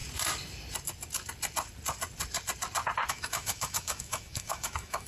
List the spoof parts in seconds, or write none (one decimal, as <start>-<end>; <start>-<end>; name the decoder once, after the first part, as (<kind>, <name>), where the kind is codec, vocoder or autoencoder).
3.1-5.1 (autoencoder, DAC-VAE)